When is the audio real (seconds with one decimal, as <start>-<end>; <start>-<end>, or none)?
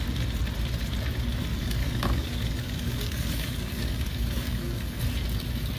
0.0-1.5; 5.0-5.8